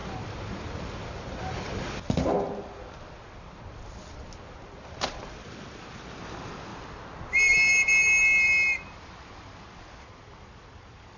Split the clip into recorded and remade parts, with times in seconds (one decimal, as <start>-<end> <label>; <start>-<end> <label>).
0.0-11.2 recorded